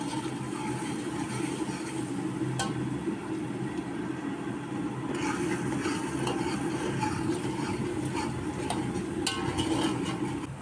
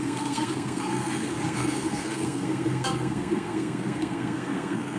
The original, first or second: first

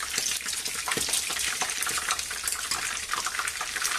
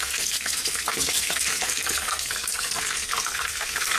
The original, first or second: first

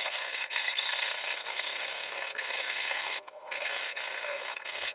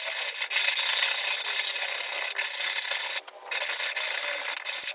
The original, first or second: second